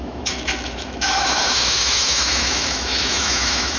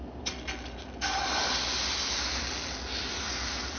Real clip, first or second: second